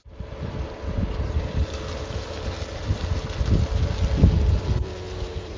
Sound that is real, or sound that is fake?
real